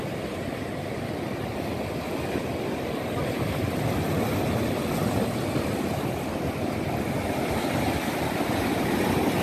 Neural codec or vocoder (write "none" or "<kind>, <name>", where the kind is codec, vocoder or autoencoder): none